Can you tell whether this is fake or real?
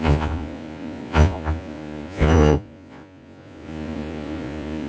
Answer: fake